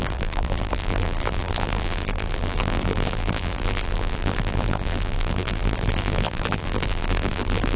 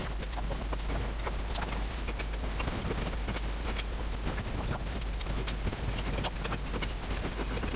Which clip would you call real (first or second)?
second